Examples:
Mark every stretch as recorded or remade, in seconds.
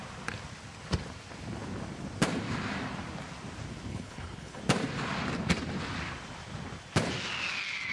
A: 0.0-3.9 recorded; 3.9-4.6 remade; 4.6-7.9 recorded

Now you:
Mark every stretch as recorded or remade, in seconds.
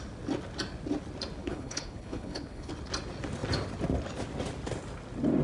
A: 0.0-1.4 recorded; 1.4-2.7 remade; 2.7-5.4 recorded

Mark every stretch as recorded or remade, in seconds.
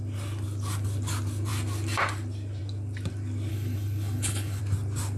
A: 0.0-3.5 recorded; 3.5-4.6 remade; 4.6-5.2 recorded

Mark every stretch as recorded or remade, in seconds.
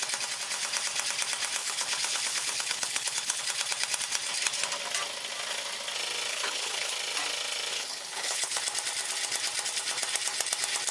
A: 0.0-1.6 recorded; 1.6-3.4 remade; 3.4-6.3 recorded; 6.3-6.9 remade; 6.9-7.7 recorded; 7.7-8.6 remade; 8.6-10.9 recorded